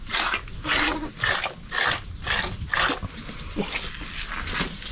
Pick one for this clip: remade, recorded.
recorded